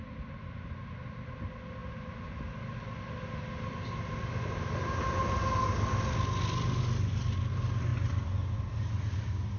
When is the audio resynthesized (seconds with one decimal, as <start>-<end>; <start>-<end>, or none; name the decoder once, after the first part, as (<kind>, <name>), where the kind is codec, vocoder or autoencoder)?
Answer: none